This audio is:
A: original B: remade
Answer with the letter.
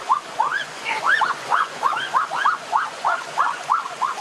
B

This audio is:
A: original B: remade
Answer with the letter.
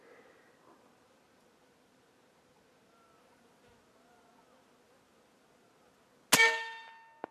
A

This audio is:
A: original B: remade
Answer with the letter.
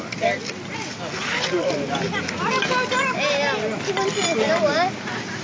A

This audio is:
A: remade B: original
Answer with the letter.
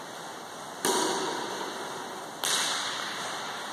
B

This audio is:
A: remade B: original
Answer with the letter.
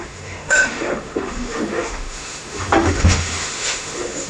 A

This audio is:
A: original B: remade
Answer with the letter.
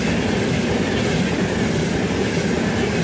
A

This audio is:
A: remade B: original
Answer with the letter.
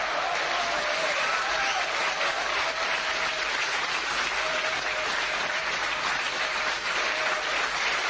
A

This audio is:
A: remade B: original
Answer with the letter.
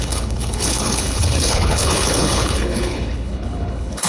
A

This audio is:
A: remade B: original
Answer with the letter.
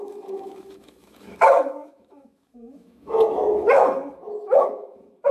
A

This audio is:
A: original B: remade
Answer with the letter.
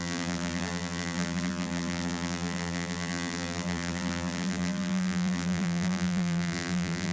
B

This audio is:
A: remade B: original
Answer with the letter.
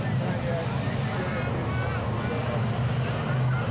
B